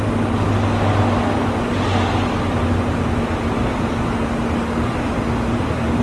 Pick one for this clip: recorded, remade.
recorded